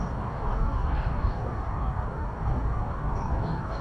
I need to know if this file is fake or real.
fake